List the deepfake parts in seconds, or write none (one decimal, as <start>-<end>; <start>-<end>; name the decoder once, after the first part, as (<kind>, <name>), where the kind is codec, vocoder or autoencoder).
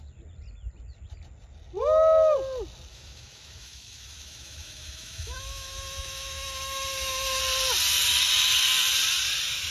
2.9-7.4 (autoencoder, DAC-VAE)